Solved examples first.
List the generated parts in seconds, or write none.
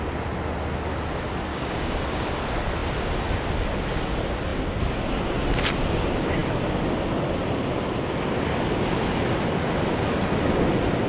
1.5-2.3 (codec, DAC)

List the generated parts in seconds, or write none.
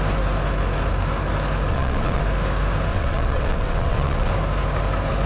1.7-2.2 (vocoder, WaveNeXt); 2.9-4.3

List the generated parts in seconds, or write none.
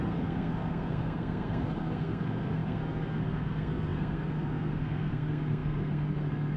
0.0-6.6 (codec, SNAC)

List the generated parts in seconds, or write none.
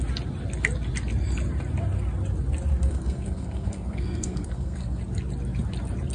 2.8-5.0 (codec, SNAC)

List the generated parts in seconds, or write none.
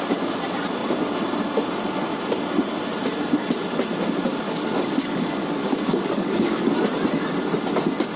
4.3-6.7 (codec, DAC)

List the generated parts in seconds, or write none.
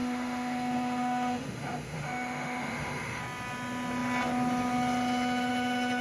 0.0-3.2 (autoencoder, DAC-VAE)